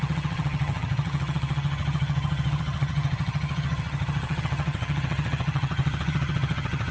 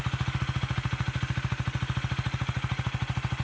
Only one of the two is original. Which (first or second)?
second